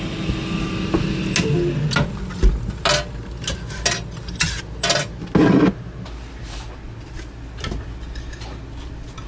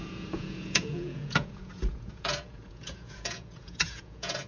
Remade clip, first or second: second